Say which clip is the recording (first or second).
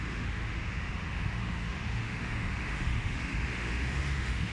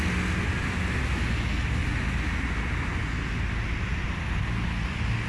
second